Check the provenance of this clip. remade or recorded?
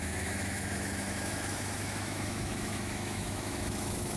remade